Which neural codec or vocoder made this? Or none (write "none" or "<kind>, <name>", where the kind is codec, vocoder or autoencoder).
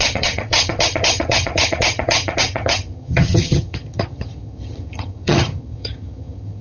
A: vocoder, HiFi-GAN